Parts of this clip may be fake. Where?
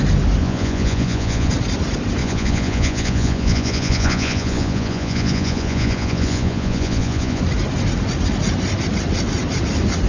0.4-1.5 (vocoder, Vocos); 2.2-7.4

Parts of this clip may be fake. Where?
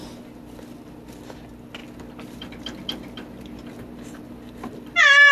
none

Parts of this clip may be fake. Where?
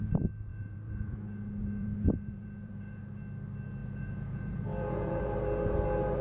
0.5-3.0 (vocoder, Vocos); 3.8-5.2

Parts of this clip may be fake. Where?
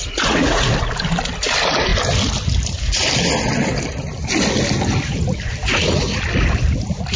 0.0-0.7 (vocoder, Vocos); 5.7-6.2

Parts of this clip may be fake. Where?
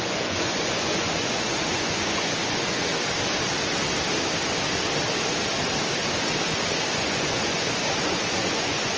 0.0-2.9 (vocoder, Vocos); 6.9-9.0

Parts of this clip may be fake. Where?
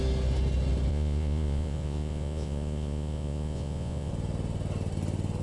0.9-4.1 (vocoder, Vocos)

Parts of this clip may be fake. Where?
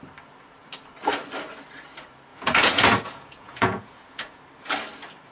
2.3-4.4 (vocoder, Vocos)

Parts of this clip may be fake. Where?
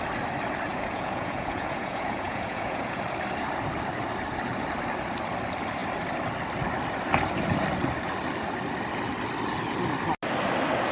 0.7-3.0 (vocoder, Vocos)